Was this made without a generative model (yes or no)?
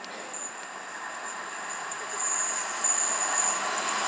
yes